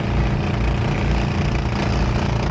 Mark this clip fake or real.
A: real